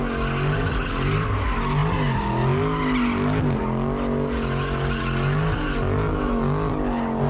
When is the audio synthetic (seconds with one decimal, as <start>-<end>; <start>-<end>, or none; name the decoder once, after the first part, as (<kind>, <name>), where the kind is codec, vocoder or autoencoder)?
none